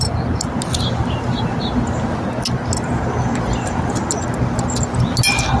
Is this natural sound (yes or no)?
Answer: yes